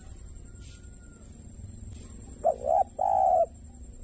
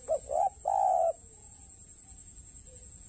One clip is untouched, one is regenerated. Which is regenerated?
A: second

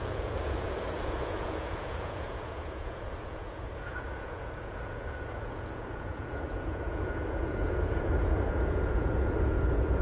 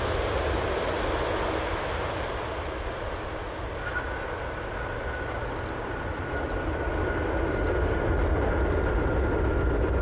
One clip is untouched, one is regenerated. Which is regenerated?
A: first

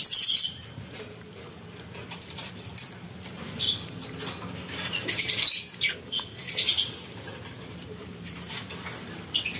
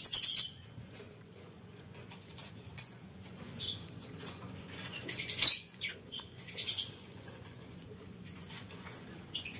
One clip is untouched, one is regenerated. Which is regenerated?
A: second